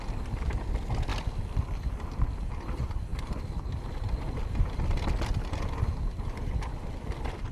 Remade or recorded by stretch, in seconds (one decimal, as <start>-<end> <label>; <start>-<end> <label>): 0.0-7.5 recorded